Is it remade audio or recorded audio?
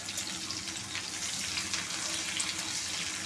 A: recorded